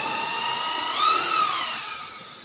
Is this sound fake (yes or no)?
no